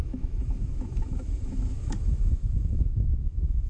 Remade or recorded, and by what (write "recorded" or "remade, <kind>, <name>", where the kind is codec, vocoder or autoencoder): remade, autoencoder, DAC-VAE